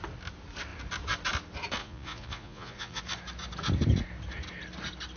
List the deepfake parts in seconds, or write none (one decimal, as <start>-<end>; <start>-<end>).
1.8-3.0